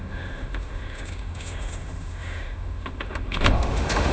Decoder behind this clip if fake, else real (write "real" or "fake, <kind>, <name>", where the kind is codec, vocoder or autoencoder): fake, autoencoder, DAC-VAE